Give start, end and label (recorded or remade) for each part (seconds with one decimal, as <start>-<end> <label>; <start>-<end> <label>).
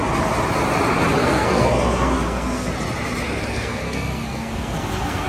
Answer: 0.0-1.2 recorded; 1.2-2.7 remade; 2.7-3.5 recorded; 3.5-5.3 remade